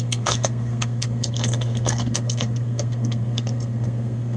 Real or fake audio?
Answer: fake